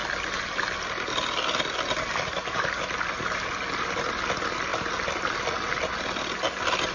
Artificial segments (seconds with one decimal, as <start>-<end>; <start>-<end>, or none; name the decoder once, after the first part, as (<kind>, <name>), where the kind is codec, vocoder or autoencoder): none

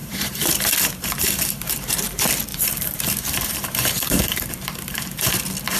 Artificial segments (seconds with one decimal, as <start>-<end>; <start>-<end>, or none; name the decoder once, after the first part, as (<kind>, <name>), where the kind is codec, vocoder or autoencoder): 0.0-1.9 (vocoder, BigVGAN v2); 2.5-5.3

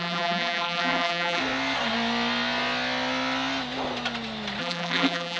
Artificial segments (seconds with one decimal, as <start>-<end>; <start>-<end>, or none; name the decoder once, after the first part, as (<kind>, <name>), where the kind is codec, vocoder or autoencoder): 0.0-1.4 (vocoder, BigVGAN v2); 4.6-5.4

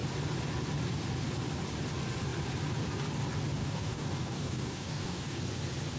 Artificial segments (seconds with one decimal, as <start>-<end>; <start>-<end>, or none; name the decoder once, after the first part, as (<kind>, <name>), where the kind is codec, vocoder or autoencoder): 3.6-5.4 (codec, DAC)

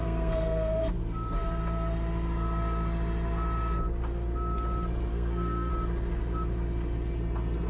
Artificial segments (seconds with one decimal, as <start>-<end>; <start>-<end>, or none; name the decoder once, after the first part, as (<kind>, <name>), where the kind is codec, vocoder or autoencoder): 0.0-0.9 (codec, SNAC); 5.1-5.7